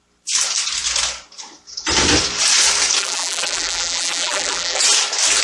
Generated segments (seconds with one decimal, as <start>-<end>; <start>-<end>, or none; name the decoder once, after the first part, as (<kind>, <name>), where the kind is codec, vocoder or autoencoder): 3.0-4.8 (vocoder, BigVGAN v2)